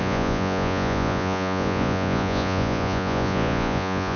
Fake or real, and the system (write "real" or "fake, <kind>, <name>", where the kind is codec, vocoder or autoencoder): fake, vocoder, Vocos